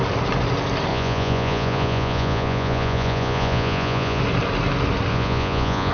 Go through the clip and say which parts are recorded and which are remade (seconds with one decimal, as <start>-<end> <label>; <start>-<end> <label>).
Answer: 0.0-0.9 recorded; 0.9-4.2 remade; 4.2-5.1 recorded; 5.1-5.9 remade

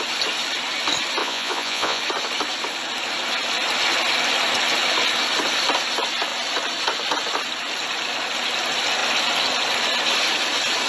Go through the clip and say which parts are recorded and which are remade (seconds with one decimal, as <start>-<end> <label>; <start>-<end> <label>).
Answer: 0.0-1.2 recorded; 1.2-2.0 remade; 2.0-10.9 recorded

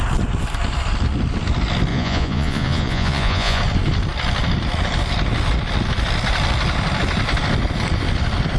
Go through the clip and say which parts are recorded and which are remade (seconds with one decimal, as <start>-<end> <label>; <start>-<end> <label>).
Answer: 0.0-1.9 recorded; 1.9-3.6 remade; 3.6-8.6 recorded

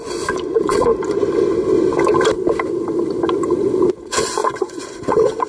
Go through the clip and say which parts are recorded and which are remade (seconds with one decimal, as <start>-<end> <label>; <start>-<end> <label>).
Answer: 0.0-0.9 remade; 0.9-3.9 recorded; 3.9-5.5 remade

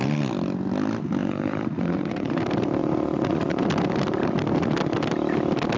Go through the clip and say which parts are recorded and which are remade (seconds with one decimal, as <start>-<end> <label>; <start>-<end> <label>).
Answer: 0.0-1.2 recorded; 1.2-2.4 remade; 2.4-2.8 recorded; 2.8-3.6 remade; 3.6-5.8 recorded

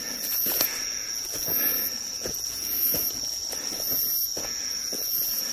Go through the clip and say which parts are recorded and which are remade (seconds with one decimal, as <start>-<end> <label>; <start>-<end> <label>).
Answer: 0.0-3.4 remade; 3.4-4.2 recorded; 4.2-5.5 remade

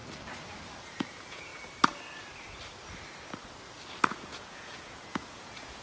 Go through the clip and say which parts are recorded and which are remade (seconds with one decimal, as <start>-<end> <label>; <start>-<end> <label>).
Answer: 0.0-0.8 recorded; 0.8-1.5 remade; 1.5-4.1 recorded; 4.1-5.8 remade